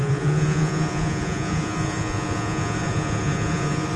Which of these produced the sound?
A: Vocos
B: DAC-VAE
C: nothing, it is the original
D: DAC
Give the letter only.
A